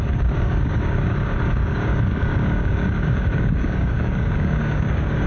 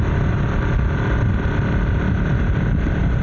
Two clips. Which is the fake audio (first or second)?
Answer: first